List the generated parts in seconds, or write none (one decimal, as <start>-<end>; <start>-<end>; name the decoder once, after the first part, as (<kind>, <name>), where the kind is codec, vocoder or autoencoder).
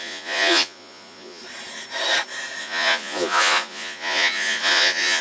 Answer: 0.0-1.4 (vocoder, Vocos); 2.6-5.2